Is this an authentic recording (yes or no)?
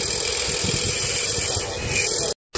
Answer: yes